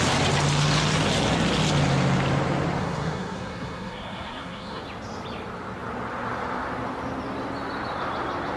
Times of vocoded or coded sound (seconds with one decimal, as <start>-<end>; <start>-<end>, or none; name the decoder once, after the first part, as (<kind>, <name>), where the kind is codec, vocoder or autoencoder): 2.8-4.8 (codec, SNAC)